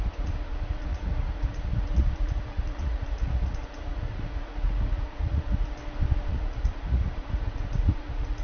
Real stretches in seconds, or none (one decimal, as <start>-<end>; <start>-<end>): 5.8-6.3